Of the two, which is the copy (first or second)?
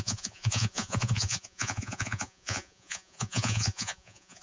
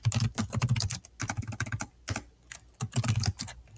first